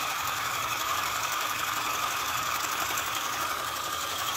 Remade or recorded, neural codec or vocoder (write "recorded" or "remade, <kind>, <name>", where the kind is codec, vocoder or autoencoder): remade, codec, DAC